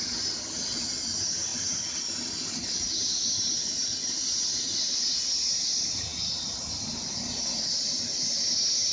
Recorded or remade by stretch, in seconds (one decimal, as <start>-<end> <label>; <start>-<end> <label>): 0.0-8.9 recorded